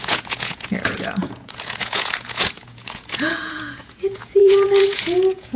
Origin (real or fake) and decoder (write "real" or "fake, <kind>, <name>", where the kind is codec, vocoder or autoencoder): fake, vocoder, Vocos